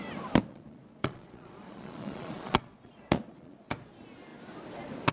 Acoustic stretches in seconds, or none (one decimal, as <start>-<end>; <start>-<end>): 0.0-0.5; 3.6-5.1